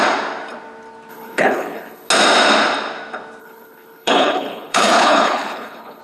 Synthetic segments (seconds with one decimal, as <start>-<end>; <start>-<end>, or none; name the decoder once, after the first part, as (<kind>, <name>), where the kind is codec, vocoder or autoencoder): 1.1-2.1 (codec, HILCodec); 3.4-6.0